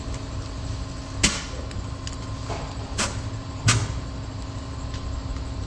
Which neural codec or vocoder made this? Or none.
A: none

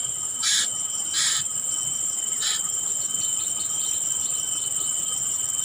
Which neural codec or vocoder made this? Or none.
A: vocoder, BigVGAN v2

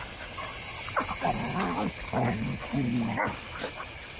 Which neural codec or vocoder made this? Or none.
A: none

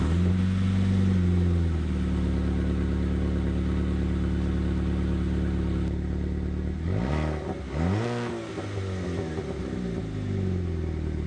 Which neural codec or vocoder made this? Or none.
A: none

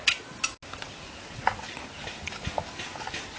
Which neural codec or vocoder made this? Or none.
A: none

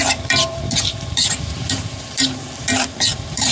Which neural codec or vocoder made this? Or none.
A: vocoder, BigVGAN v2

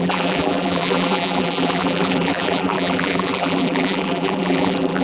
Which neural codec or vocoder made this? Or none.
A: vocoder, BigVGAN v2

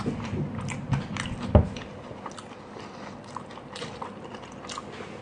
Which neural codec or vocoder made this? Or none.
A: vocoder, BigVGAN v2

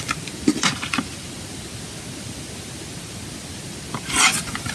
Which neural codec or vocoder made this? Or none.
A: none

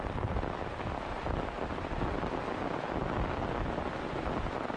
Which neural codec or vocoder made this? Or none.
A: none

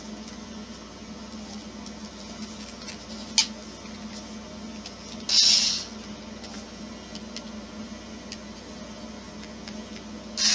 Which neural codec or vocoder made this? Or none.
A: none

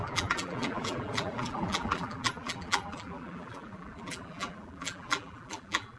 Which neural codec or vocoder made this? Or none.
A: vocoder, BigVGAN v2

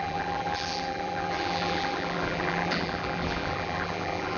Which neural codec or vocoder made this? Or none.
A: vocoder, BigVGAN v2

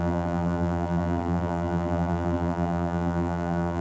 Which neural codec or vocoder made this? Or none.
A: vocoder, BigVGAN v2